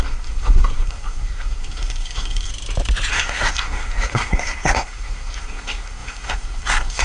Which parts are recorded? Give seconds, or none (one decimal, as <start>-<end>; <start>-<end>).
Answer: 2.5-3.1